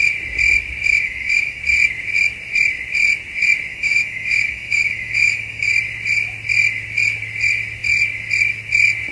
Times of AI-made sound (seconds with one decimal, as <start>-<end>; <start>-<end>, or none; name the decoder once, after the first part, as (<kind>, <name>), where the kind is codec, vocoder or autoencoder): 0.9-1.6 (autoencoder, DAC-VAE); 3.7-5.7